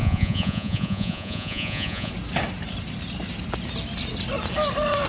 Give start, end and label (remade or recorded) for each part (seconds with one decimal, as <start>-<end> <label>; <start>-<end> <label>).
0.0-2.1 remade; 2.1-5.1 recorded